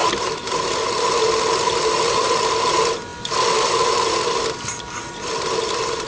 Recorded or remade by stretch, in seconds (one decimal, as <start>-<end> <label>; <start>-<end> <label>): 0.0-6.1 recorded